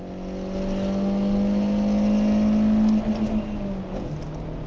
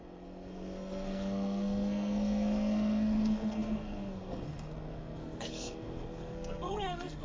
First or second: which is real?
first